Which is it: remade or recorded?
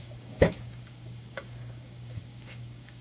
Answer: remade